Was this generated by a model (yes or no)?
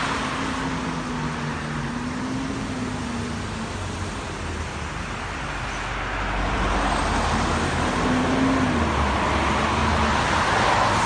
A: no